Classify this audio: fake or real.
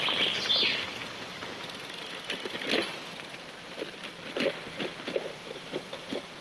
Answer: real